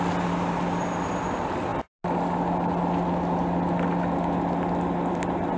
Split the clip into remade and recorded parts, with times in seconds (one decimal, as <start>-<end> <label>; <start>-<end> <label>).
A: 0.0-5.6 recorded